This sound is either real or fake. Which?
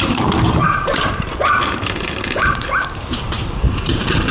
fake